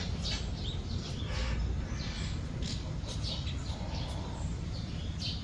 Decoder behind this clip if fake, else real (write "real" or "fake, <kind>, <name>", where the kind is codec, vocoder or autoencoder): real